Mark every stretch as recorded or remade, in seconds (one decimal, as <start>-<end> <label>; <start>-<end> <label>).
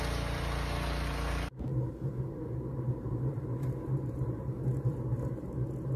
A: 0.0-1.7 recorded; 1.7-5.3 remade; 5.3-6.0 recorded